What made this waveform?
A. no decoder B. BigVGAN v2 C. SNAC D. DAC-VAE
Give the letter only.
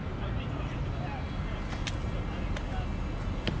A